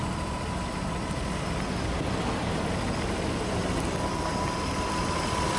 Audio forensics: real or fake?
real